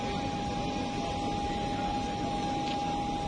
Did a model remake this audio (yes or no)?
no